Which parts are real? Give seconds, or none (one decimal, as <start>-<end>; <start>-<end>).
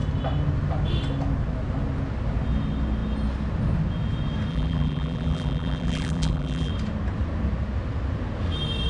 0.0-4.5; 6.7-8.9